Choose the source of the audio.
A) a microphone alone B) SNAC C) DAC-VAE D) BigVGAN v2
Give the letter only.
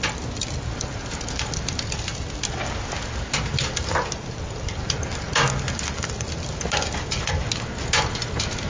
A